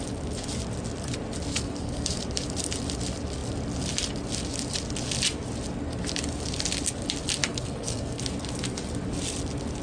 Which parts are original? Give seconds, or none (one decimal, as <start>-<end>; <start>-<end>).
0.0-1.5; 2.2-7.4; 8.2-9.8